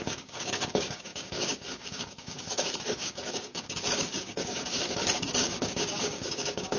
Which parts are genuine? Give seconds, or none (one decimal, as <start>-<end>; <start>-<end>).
none